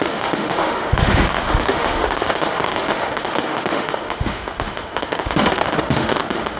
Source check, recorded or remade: remade